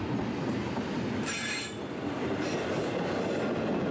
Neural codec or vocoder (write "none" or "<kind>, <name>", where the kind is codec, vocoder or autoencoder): none